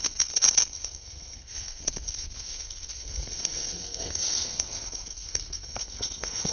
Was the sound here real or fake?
fake